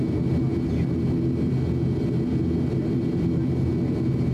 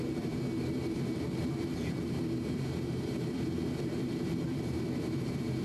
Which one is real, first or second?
first